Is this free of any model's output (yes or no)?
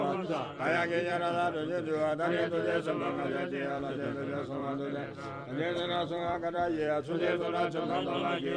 no